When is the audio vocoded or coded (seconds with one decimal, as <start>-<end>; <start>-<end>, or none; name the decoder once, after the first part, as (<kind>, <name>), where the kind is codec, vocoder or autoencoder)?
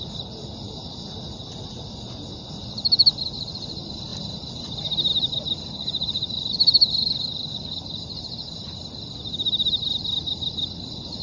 none